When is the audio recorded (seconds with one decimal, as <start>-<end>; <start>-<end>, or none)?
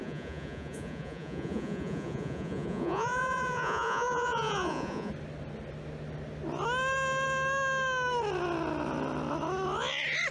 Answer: 5.1-10.3